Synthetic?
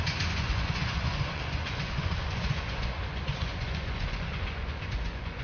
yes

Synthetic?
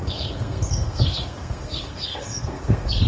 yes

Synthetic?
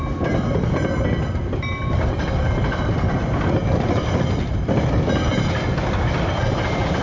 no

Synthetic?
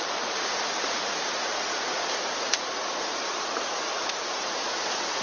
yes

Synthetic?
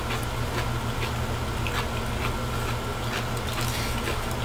no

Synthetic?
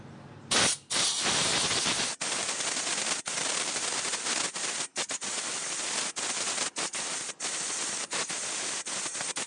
no